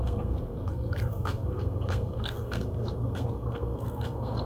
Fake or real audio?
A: fake